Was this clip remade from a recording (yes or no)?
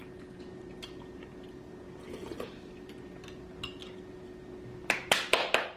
no